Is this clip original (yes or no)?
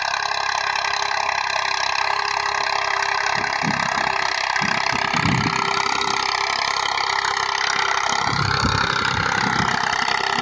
yes